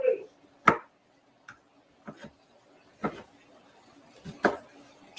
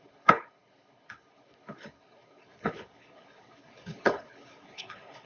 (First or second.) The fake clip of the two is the second